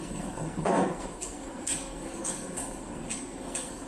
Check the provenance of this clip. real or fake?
fake